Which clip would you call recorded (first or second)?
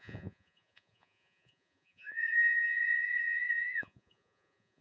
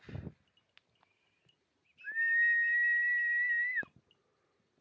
second